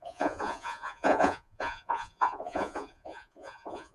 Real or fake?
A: fake